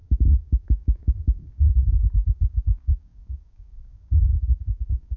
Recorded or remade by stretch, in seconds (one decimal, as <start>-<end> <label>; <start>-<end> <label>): 0.0-5.2 remade